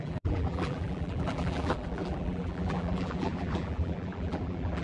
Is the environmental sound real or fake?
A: fake